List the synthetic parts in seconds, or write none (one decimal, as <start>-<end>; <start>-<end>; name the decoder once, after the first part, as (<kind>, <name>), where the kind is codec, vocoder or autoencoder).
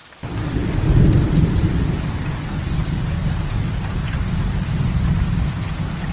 2.8-6.1 (vocoder, BigVGAN v2)